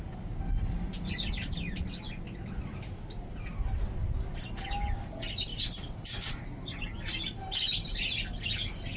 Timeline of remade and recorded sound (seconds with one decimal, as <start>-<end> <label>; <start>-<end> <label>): 0.0-9.0 recorded